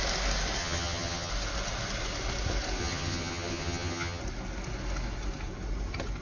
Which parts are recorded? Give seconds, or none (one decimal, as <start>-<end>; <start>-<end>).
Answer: 0.0-0.6; 1.3-2.8; 4.2-6.2